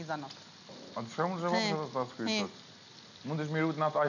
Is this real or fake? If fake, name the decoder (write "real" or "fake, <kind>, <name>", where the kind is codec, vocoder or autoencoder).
real